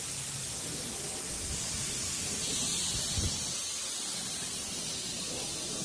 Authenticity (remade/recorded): recorded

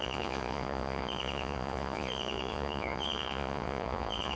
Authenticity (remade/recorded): remade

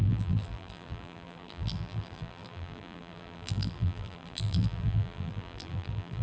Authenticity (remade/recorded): remade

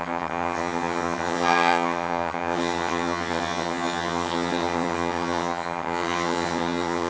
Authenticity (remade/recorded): remade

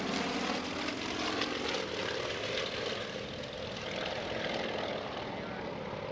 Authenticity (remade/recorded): recorded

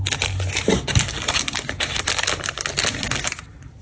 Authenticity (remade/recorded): recorded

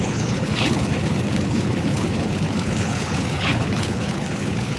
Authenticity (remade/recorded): remade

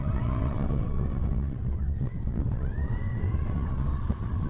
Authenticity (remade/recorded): remade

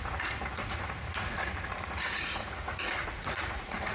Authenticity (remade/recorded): remade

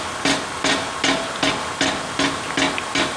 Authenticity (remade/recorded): recorded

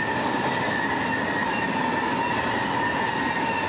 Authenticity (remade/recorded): recorded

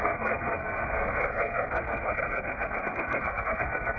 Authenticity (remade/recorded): remade